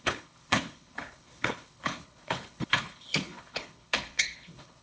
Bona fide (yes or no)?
no